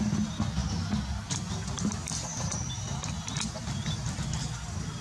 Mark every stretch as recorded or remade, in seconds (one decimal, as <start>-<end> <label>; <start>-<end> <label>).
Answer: 0.0-5.0 recorded